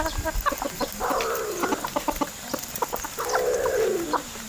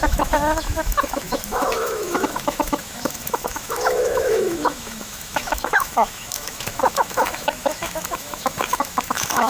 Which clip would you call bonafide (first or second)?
first